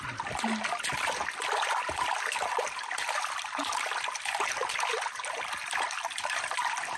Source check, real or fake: real